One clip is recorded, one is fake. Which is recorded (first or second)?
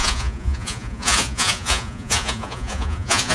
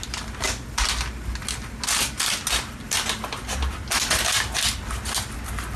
second